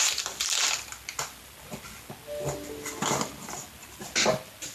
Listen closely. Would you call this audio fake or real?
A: real